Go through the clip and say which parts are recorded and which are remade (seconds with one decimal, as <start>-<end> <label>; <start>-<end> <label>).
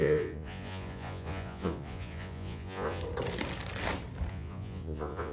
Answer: 0.0-3.0 remade; 3.0-4.3 recorded; 4.3-5.3 remade